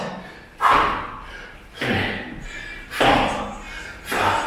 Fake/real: real